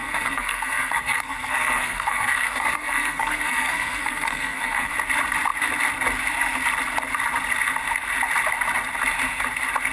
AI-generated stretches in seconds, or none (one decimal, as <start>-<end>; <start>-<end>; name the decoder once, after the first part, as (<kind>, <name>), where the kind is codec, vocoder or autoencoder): 0.0-4.9 (codec, SNAC)